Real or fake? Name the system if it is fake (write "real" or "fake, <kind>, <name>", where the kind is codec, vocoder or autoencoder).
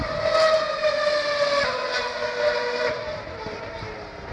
real